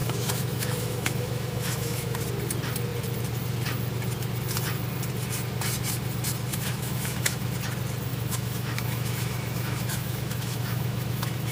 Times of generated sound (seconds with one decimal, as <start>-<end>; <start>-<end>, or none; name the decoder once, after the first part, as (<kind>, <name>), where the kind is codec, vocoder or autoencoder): 0.0-2.2 (autoencoder, DAC-VAE); 6.5-7.5; 8.1-11.5